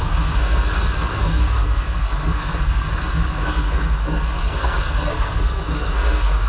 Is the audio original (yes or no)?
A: no